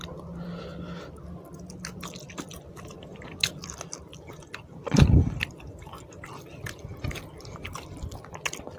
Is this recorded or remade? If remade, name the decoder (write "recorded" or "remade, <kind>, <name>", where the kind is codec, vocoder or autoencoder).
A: recorded